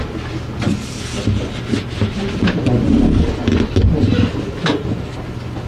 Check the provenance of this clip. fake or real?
real